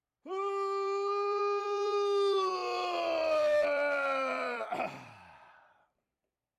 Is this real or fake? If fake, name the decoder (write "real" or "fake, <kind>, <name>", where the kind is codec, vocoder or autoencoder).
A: fake, vocoder, BigVGAN v2